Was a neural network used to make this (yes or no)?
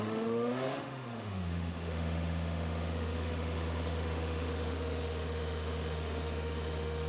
yes